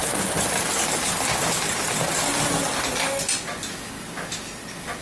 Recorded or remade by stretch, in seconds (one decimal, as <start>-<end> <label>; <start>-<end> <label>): 0.0-1.0 remade; 1.0-5.0 recorded